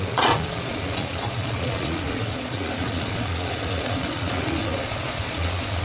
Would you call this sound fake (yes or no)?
yes